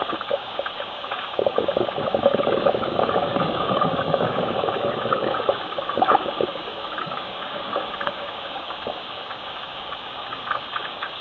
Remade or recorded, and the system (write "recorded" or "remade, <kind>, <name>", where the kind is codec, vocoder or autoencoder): remade, codec, DAC